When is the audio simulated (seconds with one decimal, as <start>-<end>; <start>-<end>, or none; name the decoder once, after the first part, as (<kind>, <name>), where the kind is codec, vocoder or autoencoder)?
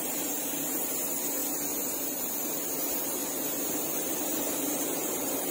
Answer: 0.0-1.4 (vocoder, BigVGAN v2); 2.7-3.2; 3.7-5.5